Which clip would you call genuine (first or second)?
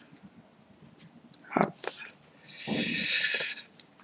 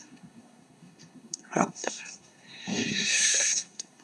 first